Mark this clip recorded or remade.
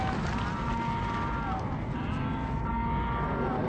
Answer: recorded